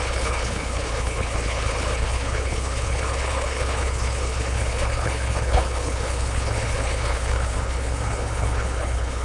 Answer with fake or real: fake